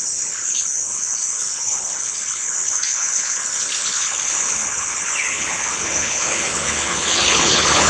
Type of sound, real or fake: fake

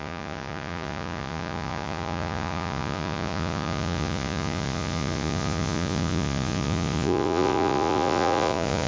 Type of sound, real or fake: fake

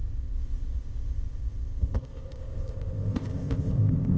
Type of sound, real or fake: fake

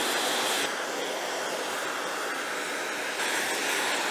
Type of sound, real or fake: real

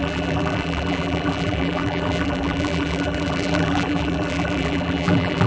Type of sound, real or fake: fake